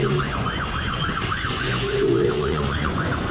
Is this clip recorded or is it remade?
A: remade